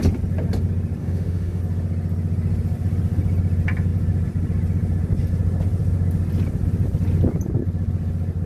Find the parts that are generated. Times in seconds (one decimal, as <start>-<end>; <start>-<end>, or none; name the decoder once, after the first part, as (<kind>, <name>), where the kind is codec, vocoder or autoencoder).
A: 1.0-1.6 (autoencoder, DAC-VAE)

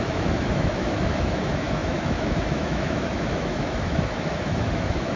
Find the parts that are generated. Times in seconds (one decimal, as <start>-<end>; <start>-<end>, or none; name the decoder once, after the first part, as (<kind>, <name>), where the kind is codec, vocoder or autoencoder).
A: 0.0-5.2 (autoencoder, DAC-VAE)